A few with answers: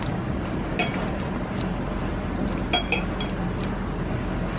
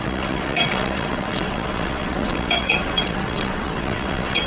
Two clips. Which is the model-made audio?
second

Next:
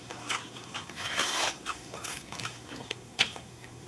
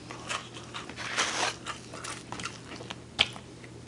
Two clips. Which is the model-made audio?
first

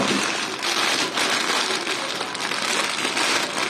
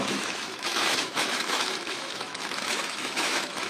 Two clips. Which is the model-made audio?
second